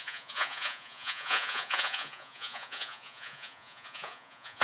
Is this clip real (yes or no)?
no